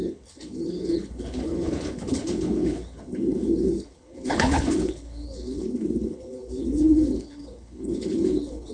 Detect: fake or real fake